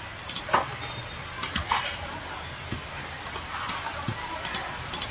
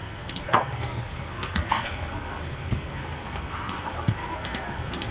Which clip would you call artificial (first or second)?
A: second